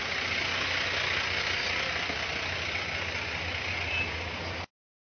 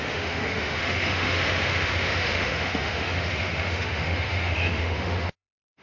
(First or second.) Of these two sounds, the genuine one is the first